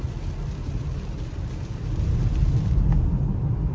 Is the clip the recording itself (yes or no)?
yes